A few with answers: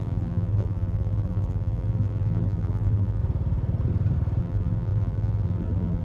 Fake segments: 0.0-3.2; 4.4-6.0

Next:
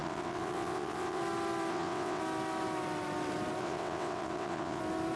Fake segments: 0.0-1.2; 1.7-2.2; 3.6-4.8